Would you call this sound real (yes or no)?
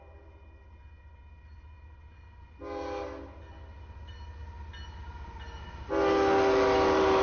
yes